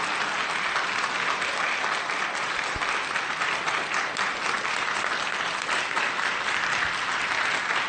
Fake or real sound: real